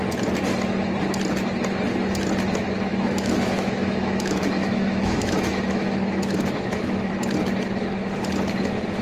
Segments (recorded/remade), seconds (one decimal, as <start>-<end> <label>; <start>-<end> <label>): 0.0-2.9 recorded; 2.9-7.1 remade; 7.1-9.0 recorded